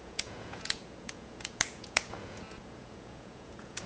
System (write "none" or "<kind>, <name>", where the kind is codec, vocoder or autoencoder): vocoder, Vocos